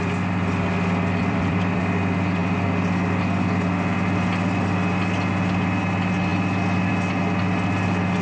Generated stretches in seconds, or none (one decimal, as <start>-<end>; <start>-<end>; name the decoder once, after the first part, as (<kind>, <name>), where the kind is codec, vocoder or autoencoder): 1.2-1.8 (vocoder, BigVGAN v2)